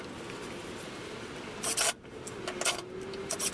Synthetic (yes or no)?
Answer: no